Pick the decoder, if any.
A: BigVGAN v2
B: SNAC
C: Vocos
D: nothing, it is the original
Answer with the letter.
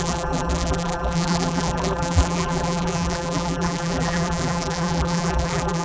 A